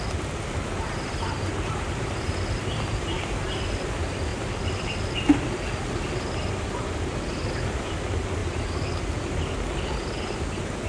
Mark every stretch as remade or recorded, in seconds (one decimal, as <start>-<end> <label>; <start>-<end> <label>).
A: 0.0-0.6 recorded; 0.6-3.2 remade; 3.2-10.9 recorded